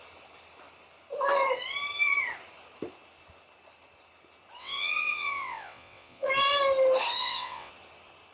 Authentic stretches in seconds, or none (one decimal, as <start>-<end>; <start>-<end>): 0.0-4.6; 6.3-7.2; 7.7-8.3